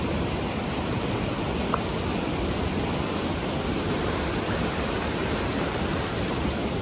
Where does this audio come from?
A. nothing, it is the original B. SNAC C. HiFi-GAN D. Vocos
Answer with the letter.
A